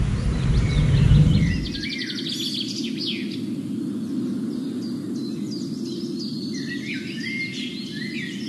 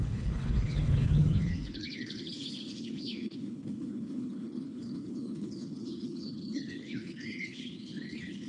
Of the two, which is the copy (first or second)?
second